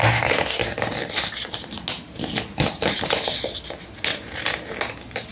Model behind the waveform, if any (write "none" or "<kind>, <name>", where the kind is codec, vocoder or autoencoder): none